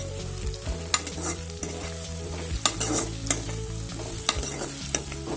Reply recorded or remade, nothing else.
recorded